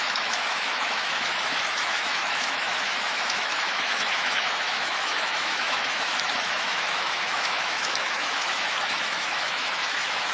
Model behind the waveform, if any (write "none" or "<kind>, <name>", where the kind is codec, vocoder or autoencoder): autoencoder, DAC-VAE